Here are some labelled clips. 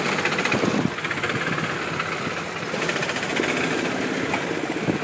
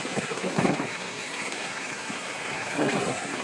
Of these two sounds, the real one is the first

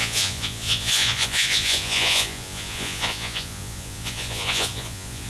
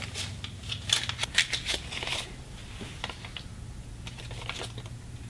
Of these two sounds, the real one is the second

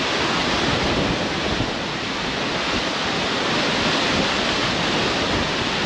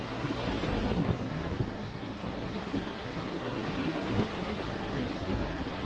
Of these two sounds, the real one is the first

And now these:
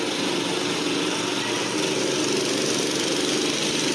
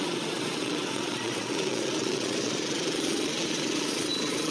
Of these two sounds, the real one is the first